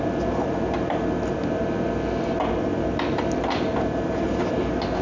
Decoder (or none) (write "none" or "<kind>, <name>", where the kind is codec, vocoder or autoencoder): none